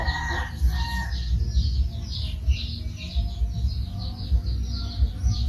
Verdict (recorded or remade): recorded